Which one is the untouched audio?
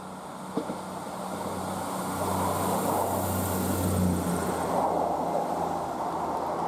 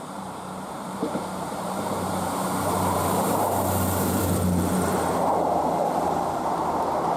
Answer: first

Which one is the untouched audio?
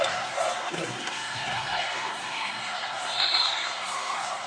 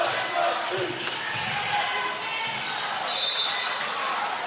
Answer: second